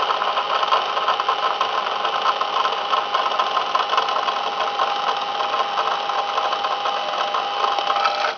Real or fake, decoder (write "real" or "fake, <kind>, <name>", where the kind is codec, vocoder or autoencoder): real